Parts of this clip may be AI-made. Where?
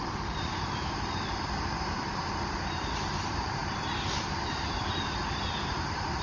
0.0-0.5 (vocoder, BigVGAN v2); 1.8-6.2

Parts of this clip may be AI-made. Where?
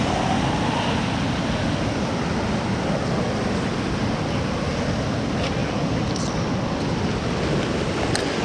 none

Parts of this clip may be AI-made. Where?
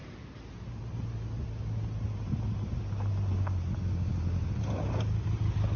none